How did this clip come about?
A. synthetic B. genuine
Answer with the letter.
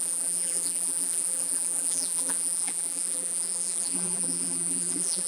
A